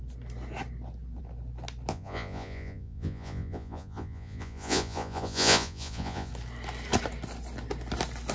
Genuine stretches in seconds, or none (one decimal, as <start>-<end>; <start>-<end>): 0.0-1.9; 6.3-8.3